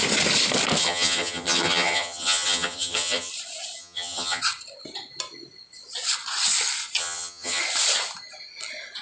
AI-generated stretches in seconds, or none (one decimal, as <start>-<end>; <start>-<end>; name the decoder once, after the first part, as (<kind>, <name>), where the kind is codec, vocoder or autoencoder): 0.8-3.3 (vocoder, HiFi-GAN); 3.8-4.4; 7.0-7.6